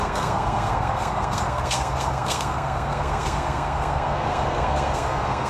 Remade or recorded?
remade